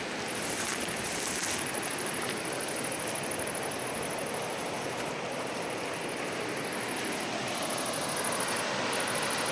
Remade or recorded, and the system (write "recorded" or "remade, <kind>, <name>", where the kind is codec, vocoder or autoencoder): recorded